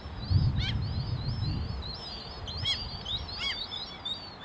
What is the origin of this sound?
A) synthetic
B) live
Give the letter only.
B